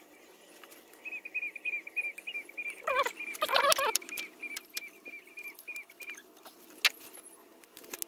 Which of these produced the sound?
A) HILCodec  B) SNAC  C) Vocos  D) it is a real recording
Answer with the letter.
D